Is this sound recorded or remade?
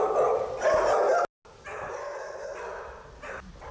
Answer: recorded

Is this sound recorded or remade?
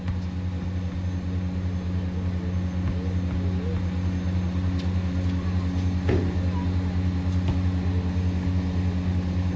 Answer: recorded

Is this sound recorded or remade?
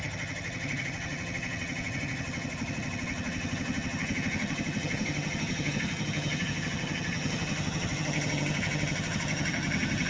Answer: remade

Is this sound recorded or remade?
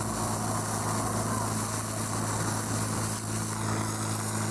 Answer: recorded